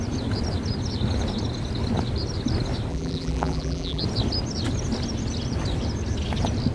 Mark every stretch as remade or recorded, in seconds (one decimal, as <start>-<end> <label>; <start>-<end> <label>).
0.0-2.9 recorded; 2.9-4.0 remade; 4.0-6.7 recorded